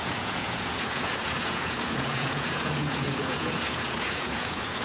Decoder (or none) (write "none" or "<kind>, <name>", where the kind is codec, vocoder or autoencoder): vocoder, Vocos